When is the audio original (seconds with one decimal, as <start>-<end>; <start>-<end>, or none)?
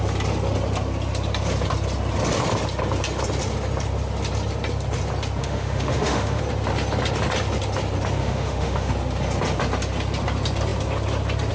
0.0-5.4; 6.4-8.2; 8.9-11.5